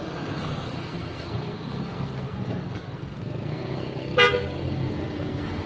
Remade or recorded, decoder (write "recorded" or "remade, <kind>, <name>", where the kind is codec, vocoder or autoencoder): remade, codec, SNAC